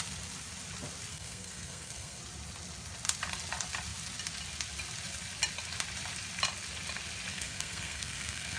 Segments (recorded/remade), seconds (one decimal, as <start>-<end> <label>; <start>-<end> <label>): 0.0-1.1 recorded; 1.1-2.2 remade; 2.2-7.3 recorded; 7.3-8.6 remade